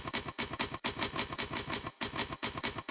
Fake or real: fake